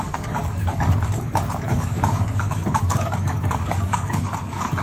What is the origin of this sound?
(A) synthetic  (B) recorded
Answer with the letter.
A